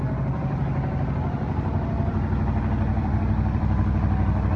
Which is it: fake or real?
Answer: fake